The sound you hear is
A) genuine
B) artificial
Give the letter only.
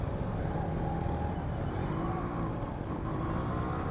A